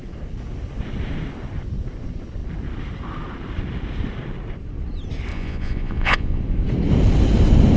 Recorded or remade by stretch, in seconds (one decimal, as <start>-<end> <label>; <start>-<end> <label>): 0.0-5.3 recorded; 5.3-6.4 remade; 6.4-7.8 recorded

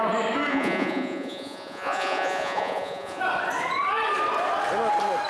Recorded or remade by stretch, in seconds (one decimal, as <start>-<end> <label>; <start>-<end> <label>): 0.0-0.5 recorded; 0.5-3.2 remade; 3.2-5.3 recorded

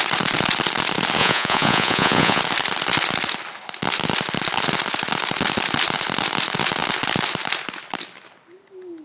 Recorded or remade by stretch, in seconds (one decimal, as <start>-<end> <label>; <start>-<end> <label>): 0.0-1.2 recorded; 1.2-2.4 remade; 2.4-9.0 recorded

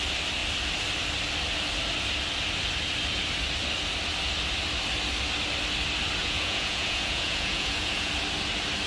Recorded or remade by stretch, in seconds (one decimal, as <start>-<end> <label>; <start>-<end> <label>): 0.0-6.2 recorded; 6.2-8.1 remade; 8.1-8.9 recorded

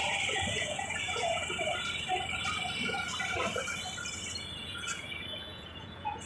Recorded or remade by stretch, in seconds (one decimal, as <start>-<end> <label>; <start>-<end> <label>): 0.0-0.5 recorded; 0.5-1.4 remade; 1.4-4.6 recorded; 4.6-6.3 remade

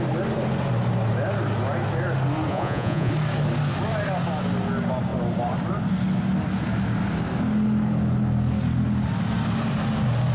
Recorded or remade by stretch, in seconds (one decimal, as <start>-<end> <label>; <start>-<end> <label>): 0.0-2.5 recorded; 2.5-3.1 remade; 3.1-10.3 recorded

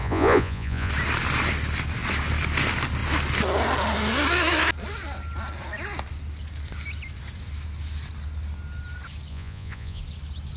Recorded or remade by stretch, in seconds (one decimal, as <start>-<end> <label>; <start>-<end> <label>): 0.0-0.9 remade; 0.9-9.3 recorded; 9.3-10.0 remade; 10.0-10.6 recorded